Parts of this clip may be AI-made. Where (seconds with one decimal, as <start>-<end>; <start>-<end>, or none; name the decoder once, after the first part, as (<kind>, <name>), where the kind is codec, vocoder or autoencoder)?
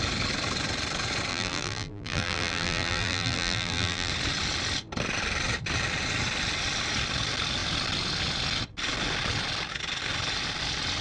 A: 1.3-4.1 (vocoder, BigVGAN v2)